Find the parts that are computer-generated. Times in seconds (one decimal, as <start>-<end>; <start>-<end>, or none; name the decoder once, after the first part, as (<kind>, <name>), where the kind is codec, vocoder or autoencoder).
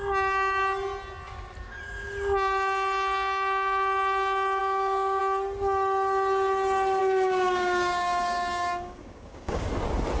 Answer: 4.6-5.2 (codec, DAC); 7.0-9.7